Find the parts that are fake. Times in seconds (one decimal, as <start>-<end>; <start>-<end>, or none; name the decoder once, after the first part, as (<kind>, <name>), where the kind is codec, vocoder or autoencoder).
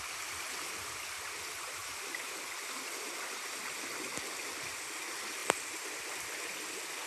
none